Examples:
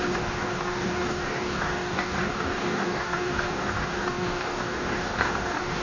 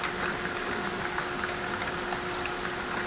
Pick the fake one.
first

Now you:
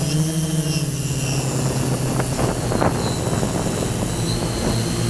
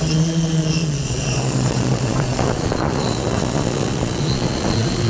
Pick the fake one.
second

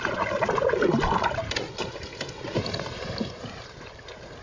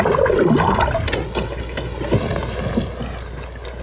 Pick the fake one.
first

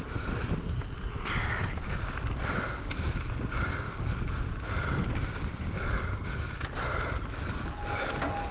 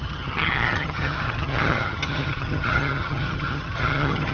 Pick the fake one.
second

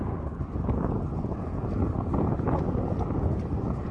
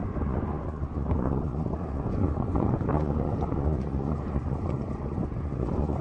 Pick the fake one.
second